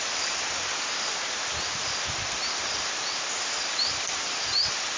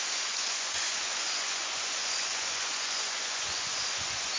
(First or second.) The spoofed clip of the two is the second